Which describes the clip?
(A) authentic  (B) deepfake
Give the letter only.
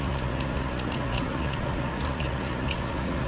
B